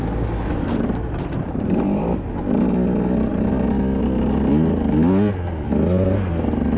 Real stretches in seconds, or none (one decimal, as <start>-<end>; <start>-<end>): 0.0-0.5; 2.3-6.8